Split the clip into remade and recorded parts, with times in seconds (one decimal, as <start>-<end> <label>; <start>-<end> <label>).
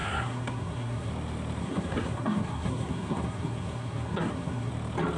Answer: 0.0-1.1 remade; 1.1-1.6 recorded; 1.6-4.7 remade; 4.7-5.2 recorded